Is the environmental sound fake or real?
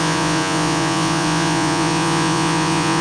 fake